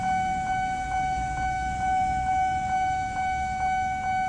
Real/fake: real